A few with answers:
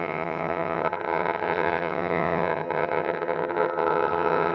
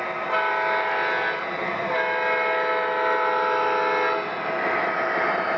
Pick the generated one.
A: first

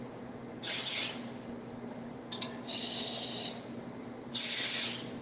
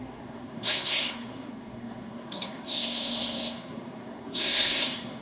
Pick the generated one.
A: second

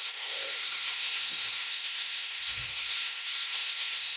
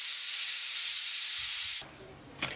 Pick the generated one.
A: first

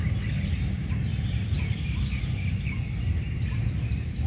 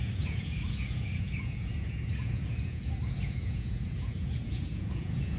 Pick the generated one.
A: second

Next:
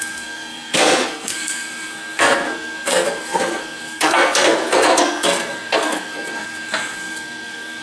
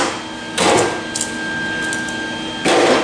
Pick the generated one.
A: first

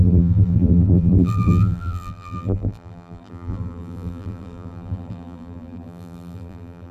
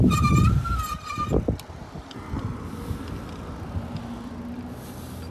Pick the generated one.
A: first